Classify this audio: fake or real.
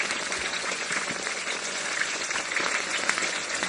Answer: fake